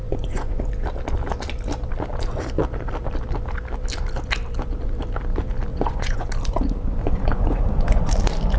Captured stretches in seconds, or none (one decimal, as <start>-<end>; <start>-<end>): 0.6-5.7; 6.3-7.0; 8.1-8.6